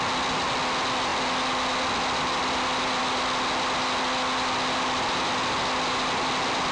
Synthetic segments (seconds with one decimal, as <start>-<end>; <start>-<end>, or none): none